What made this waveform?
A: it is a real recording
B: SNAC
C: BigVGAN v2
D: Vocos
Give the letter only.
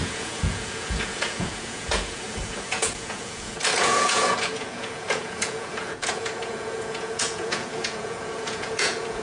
D